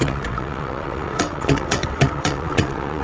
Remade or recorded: remade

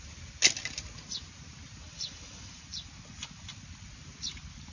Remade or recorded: recorded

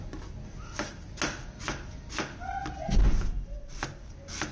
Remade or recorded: recorded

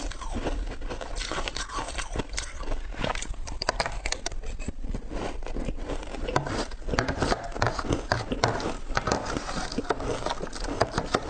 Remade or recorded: recorded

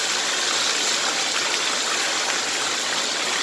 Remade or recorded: recorded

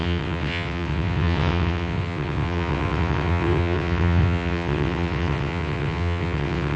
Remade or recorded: remade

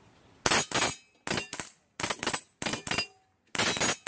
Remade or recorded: recorded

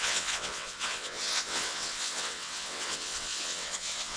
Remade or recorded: remade